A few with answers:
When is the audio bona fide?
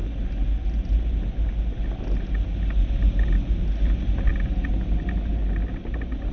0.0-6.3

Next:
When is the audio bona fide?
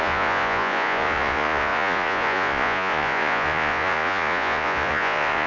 none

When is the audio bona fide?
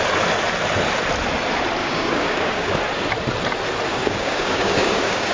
0.0-1.8; 2.7-3.9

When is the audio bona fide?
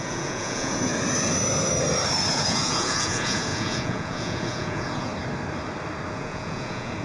0.9-2.3; 5.1-6.1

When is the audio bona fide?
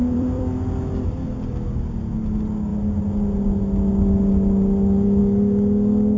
0.5-6.2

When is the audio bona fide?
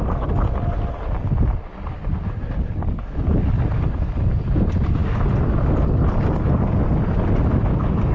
0.0-8.1